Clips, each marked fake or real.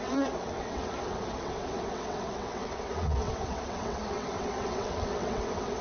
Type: fake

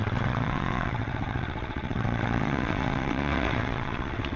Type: fake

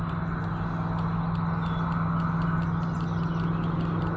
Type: real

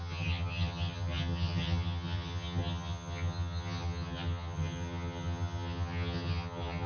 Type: fake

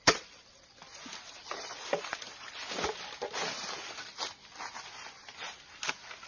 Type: real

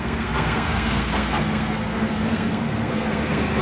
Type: fake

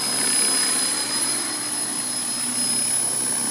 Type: real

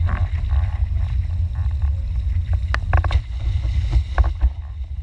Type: real